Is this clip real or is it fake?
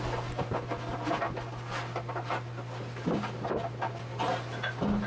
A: real